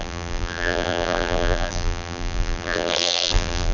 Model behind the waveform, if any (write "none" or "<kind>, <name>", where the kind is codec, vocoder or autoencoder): vocoder, BigVGAN v2